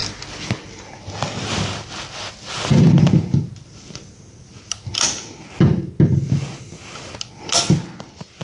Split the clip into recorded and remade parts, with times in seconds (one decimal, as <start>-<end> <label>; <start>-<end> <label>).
0.0-8.4 recorded